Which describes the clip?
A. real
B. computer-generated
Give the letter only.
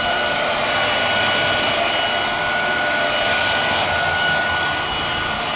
A